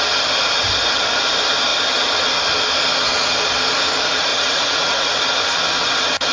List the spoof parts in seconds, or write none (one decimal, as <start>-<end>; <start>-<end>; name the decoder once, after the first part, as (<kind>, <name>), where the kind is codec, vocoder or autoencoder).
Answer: 4.3-5.2 (vocoder, Vocos)